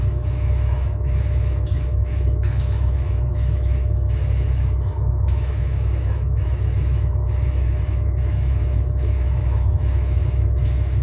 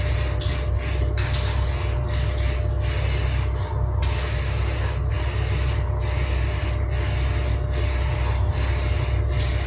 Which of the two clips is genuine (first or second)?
second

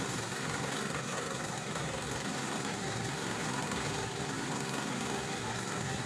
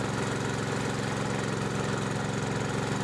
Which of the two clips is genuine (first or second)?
second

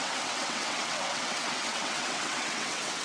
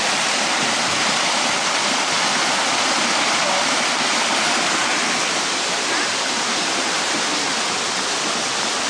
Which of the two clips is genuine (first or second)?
second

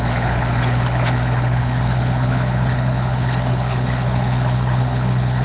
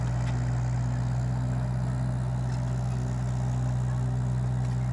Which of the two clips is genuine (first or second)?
second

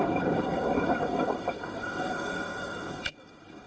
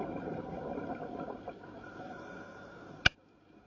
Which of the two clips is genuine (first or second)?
second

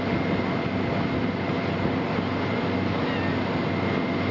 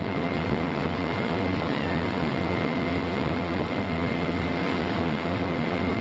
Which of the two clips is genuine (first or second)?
first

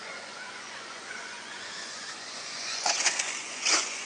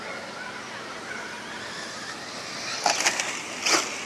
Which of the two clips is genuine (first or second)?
second